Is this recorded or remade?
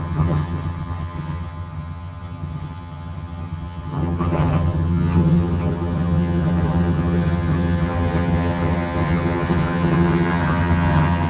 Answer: remade